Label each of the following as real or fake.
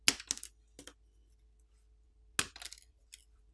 real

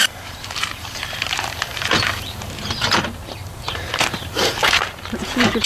fake